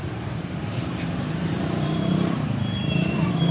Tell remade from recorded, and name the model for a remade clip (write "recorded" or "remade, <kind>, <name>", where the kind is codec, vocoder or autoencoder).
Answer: remade, vocoder, BigVGAN v2